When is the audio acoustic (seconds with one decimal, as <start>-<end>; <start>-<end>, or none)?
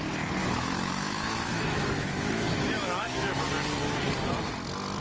0.0-0.4; 3.4-5.0